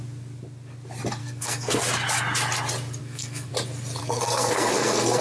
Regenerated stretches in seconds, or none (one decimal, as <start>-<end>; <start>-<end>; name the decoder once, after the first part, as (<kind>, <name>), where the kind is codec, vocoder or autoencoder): 1.2-1.8 (codec, SNAC); 3.0-3.5; 4.0-5.2